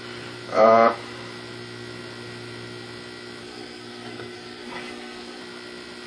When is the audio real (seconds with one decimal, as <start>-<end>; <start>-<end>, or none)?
0.0-3.4; 5.4-6.1